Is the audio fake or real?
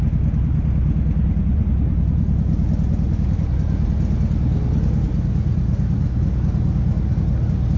real